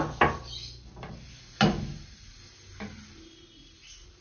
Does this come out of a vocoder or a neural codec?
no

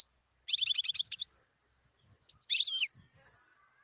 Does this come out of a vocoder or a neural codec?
no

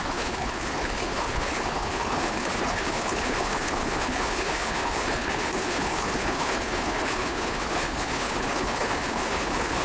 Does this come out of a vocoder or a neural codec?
yes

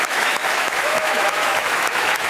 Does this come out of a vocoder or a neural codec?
yes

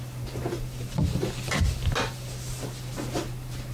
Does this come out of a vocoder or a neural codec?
no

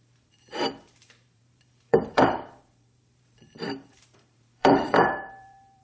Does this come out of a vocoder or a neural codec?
yes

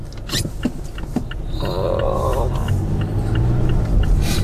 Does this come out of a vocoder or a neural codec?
no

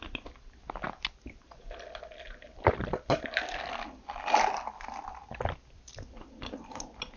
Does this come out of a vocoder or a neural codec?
no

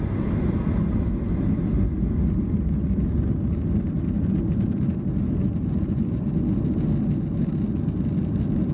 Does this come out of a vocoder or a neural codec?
no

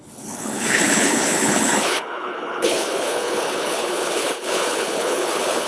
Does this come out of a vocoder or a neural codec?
yes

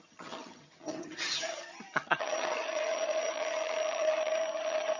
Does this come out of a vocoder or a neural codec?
yes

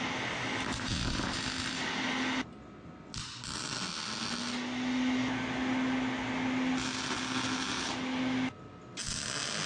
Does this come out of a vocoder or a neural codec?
no